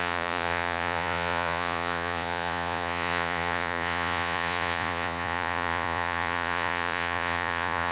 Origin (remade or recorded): remade